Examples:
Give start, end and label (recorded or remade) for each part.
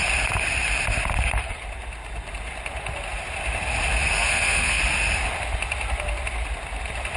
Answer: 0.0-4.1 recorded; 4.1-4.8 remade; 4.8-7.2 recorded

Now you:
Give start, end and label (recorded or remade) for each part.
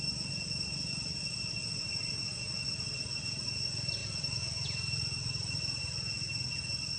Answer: 0.0-7.0 recorded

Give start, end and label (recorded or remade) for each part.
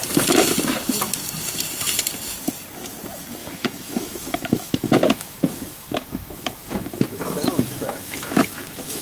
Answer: 0.0-3.4 recorded; 3.4-9.0 remade